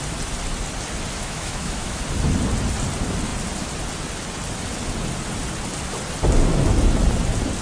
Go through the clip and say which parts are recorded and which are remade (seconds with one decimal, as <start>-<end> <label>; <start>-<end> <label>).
0.0-1.2 recorded; 1.2-2.0 remade; 2.0-7.6 recorded